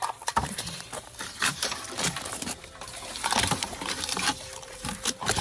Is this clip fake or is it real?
fake